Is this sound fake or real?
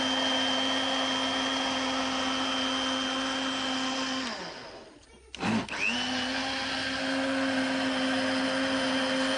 real